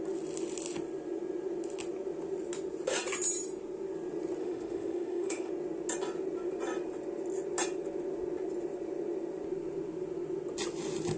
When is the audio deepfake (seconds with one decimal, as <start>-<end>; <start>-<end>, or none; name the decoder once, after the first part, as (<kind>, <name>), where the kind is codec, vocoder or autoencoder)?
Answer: 4.4-5.5 (autoencoder, DAC-VAE)